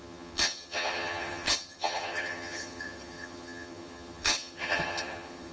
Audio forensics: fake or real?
fake